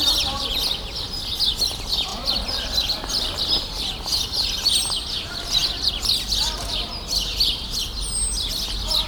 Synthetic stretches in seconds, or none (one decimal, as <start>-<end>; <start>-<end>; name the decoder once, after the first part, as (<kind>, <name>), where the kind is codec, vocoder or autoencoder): 2.1-3.4 (vocoder, BigVGAN v2); 4.1-4.7